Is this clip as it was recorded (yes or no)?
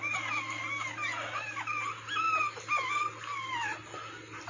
yes